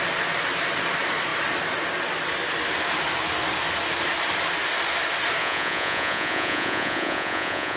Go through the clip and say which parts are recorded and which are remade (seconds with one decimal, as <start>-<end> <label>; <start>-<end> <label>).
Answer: 0.0-5.4 recorded; 5.4-7.8 remade